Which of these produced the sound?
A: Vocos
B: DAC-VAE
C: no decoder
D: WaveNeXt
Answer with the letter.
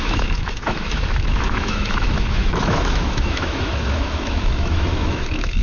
B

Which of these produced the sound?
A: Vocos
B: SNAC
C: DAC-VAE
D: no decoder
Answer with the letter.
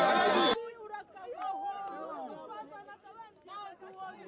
D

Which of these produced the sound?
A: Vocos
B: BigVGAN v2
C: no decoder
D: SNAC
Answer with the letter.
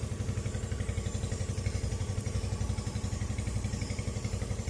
B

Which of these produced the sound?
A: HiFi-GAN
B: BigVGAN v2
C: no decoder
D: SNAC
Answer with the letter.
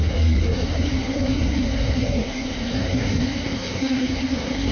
D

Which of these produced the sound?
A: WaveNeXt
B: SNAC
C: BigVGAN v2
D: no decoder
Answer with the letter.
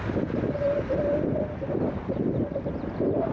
D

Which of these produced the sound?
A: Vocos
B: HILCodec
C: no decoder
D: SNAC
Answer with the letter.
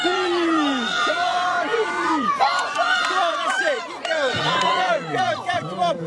A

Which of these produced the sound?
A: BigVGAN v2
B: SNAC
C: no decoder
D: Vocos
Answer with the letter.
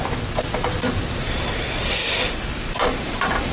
C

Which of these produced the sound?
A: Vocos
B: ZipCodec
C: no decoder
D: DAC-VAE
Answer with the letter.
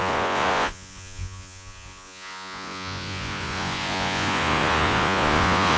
A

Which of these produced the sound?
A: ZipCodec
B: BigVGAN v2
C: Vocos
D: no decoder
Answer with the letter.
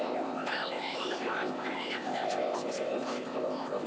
A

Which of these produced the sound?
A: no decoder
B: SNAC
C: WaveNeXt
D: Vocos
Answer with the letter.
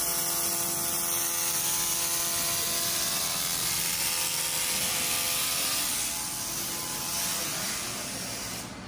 A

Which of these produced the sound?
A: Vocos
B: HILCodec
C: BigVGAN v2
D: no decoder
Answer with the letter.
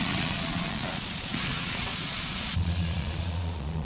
A